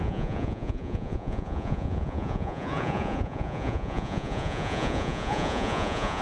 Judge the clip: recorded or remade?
remade